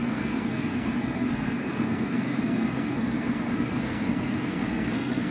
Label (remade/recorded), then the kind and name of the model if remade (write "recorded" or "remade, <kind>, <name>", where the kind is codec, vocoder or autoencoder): remade, codec, SNAC